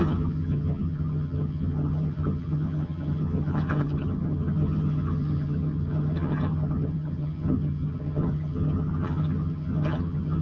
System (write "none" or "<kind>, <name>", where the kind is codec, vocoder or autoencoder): vocoder, HiFi-GAN